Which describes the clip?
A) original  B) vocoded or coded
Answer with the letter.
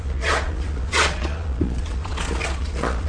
B